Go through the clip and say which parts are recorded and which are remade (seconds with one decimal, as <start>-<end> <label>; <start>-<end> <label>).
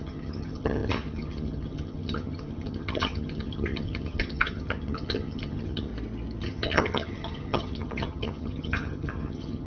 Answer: 0.0-5.9 remade; 5.9-6.4 recorded; 6.4-9.7 remade